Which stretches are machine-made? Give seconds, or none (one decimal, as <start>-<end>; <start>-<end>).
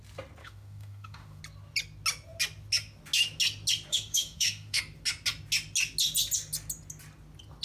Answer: 0.4-1.4; 3.9-4.8